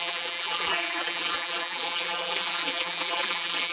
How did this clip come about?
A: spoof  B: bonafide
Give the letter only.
A